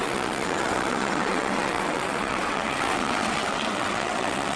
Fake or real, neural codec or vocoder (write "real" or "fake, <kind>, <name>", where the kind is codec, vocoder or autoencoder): fake, vocoder, WaveNeXt